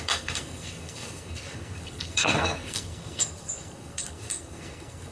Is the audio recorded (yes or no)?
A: no